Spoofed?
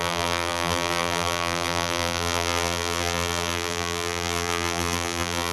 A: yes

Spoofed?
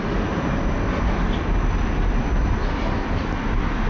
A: no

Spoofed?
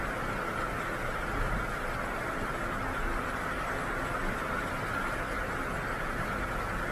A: no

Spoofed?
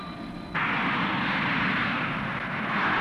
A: no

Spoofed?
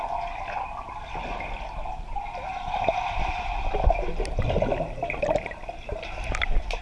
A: no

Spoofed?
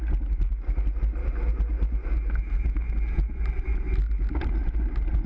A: no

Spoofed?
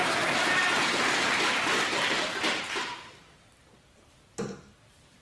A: yes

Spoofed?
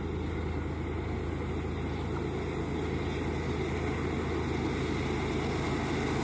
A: no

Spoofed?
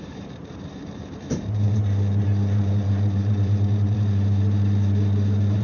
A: yes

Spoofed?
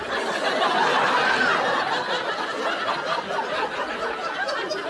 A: no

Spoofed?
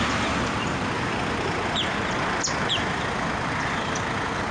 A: yes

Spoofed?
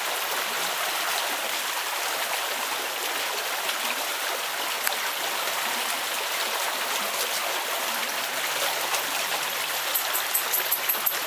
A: no